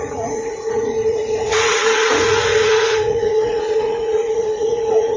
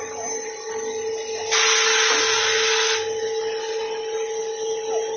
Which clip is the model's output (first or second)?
first